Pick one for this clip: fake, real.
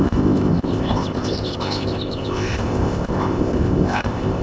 fake